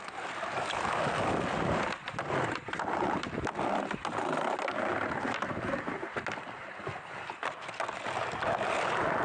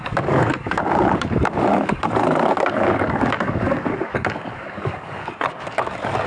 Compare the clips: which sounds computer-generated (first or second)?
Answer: second